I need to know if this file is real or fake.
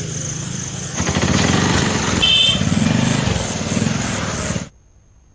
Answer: real